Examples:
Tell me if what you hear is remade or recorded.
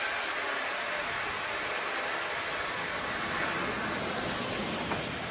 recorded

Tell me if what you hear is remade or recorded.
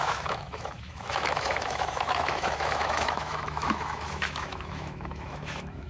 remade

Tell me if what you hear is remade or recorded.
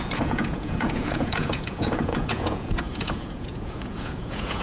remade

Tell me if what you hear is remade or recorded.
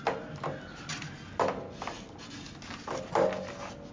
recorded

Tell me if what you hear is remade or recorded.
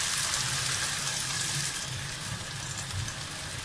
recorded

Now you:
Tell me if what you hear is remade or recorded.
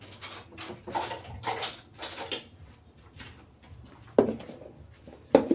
recorded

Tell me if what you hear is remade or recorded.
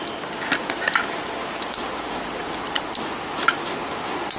recorded